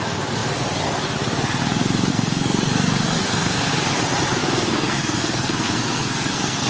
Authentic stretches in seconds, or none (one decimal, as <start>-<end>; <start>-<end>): 0.0-2.1; 3.7-4.4